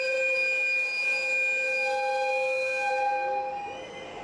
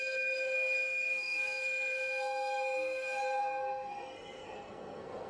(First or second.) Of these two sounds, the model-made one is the second